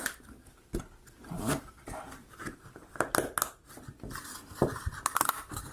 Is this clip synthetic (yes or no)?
no